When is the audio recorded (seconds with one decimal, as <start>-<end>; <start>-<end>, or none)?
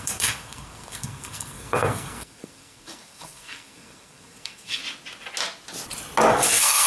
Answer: 4.8-6.3